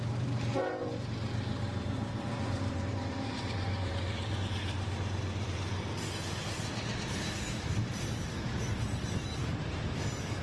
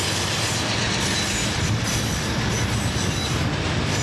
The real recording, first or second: second